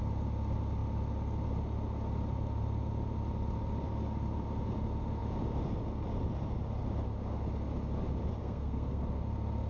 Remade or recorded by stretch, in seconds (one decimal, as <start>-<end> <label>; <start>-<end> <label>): 0.0-8.4 recorded; 8.4-9.0 remade; 9.0-9.7 recorded